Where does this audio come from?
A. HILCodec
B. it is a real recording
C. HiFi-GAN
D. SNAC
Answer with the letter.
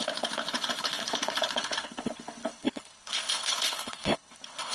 A